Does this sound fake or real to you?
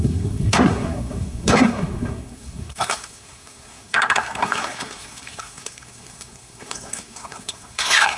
fake